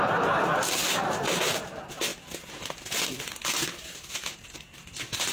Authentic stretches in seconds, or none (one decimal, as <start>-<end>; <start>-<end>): 0.0-5.3